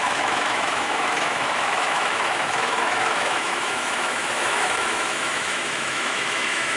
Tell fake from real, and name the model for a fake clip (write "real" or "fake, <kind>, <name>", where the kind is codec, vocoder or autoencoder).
fake, autoencoder, DAC-VAE